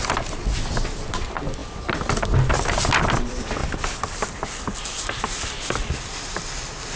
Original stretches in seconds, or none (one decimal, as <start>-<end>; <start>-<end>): 0.0-7.0